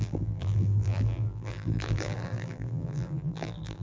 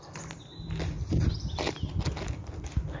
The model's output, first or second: first